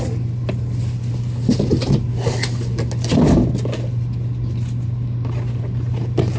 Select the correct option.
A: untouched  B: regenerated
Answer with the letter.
A